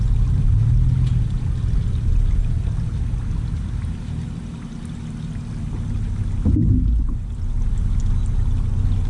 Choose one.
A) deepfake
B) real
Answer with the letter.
B